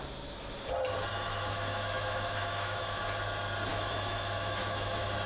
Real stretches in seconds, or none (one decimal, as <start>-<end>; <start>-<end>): 0.0-1.1; 3.0-3.7